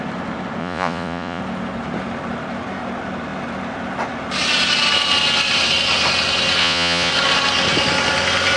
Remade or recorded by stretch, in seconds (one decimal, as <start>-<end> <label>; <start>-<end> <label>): 0.0-0.6 recorded; 0.6-1.4 remade; 1.4-6.6 recorded; 6.6-7.1 remade; 7.1-8.6 recorded